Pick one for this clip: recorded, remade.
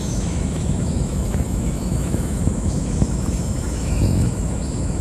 remade